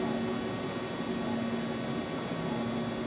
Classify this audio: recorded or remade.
recorded